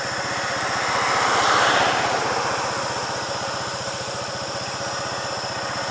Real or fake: real